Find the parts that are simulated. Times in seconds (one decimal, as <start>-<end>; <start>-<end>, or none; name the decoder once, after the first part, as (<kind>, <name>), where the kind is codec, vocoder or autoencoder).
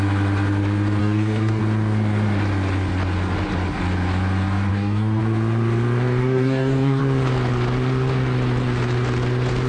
1.0-1.6 (codec, DAC); 4.7-5.2; 6.2-7.0